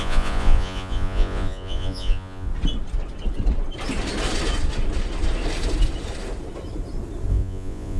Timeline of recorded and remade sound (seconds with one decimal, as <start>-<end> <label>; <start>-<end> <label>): 0.0-2.5 remade; 2.5-7.3 recorded; 7.3-8.0 remade